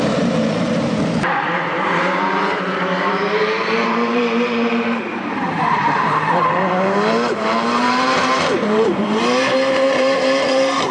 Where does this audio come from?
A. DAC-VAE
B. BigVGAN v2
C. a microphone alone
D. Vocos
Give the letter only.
B